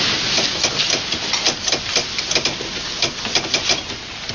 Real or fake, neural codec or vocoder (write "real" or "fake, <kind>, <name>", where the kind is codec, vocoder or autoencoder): real